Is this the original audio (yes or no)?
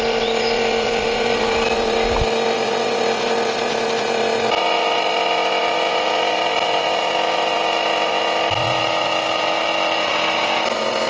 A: yes